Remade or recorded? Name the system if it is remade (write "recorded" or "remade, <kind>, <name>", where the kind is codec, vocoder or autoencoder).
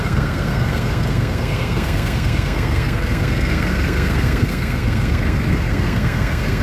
remade, codec, SNAC